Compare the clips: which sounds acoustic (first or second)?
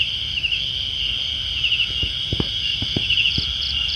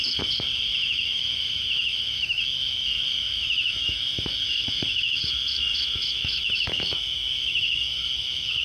first